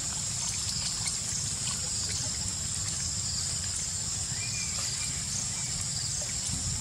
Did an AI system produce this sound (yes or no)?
no